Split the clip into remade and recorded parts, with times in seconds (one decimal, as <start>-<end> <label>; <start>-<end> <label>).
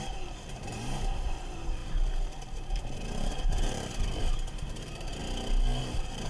0.0-5.2 remade; 5.2-5.8 recorded; 5.8-6.3 remade